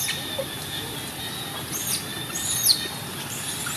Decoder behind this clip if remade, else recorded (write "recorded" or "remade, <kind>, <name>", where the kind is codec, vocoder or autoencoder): recorded